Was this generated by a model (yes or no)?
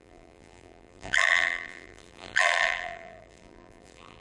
yes